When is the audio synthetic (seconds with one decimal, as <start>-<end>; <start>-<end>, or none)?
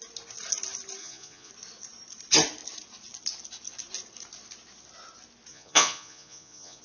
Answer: 1.0-1.5; 5.5-6.8